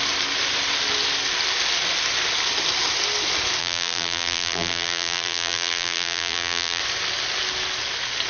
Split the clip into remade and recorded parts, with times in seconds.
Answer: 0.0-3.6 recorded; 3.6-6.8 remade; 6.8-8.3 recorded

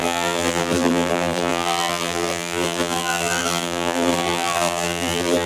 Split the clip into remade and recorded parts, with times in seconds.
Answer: 0.0-5.5 remade